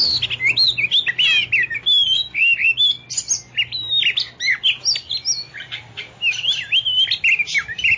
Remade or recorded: recorded